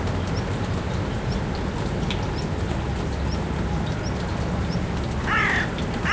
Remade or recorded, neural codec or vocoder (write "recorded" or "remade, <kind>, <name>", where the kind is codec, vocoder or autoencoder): recorded